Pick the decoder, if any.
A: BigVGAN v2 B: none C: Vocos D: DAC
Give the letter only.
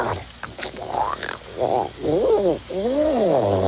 D